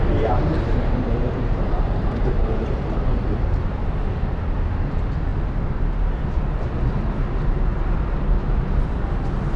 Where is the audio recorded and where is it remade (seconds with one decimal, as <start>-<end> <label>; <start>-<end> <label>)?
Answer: 0.0-3.2 remade; 3.2-9.6 recorded